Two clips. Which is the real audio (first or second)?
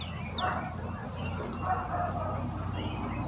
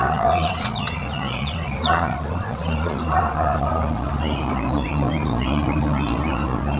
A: first